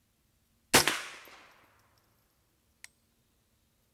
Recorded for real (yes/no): yes